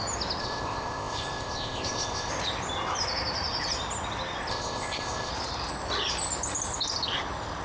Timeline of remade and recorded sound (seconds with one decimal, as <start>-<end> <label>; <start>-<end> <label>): 0.0-0.4 recorded; 0.4-2.3 remade; 2.3-4.5 recorded; 4.5-5.3 remade; 5.3-7.6 recorded